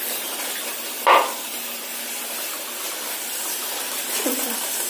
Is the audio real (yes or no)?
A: yes